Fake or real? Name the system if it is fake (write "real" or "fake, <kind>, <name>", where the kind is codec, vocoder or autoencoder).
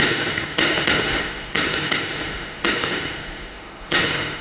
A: fake, autoencoder, DAC-VAE